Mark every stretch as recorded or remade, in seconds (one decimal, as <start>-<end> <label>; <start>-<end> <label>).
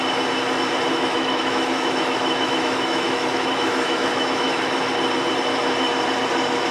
0.0-0.9 recorded; 0.9-4.9 remade; 4.9-6.7 recorded